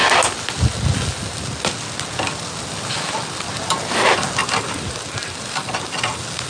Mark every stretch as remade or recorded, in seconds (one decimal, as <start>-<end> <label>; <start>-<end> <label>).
0.0-6.5 recorded